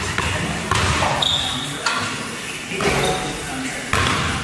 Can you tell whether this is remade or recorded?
recorded